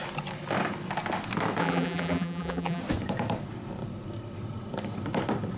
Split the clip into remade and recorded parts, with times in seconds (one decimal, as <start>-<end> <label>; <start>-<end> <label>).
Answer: 0.0-1.6 recorded; 1.6-2.8 remade; 2.8-5.6 recorded